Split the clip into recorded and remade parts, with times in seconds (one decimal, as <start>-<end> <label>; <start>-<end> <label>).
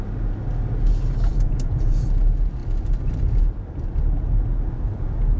0.0-1.3 recorded; 1.3-2.0 remade; 2.0-5.4 recorded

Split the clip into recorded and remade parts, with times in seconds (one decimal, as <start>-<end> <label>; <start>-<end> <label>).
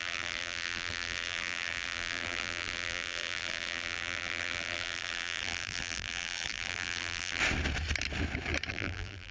0.0-7.4 remade; 7.4-8.7 recorded; 8.7-9.3 remade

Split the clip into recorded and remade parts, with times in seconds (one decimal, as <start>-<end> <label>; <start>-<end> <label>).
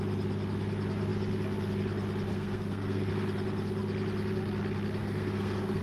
0.0-2.3 recorded; 2.3-3.1 remade; 3.1-5.0 recorded; 5.0-5.8 remade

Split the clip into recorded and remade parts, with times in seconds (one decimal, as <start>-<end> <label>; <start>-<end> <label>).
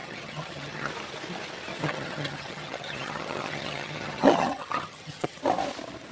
0.0-0.9 remade; 0.9-1.7 recorded; 1.7-5.4 remade; 5.4-6.1 recorded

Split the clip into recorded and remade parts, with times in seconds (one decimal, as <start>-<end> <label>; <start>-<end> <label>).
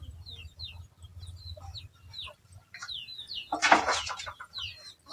0.0-2.8 recorded; 2.8-4.6 remade; 4.6-5.1 recorded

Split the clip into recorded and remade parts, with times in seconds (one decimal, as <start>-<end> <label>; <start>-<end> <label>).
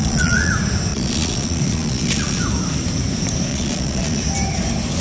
0.0-0.5 remade; 0.5-0.9 recorded; 0.9-2.4 remade; 2.4-3.5 recorded; 3.5-4.2 remade; 4.2-5.0 recorded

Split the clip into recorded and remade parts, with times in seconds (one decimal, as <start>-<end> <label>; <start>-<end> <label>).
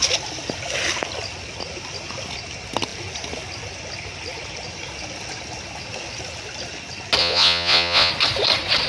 0.0-7.2 recorded; 7.2-8.1 remade; 8.1-8.9 recorded